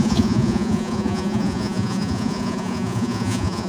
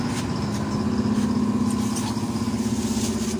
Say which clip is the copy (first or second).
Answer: first